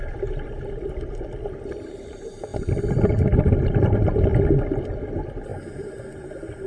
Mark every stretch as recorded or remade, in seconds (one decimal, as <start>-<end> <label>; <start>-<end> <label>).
0.0-6.7 recorded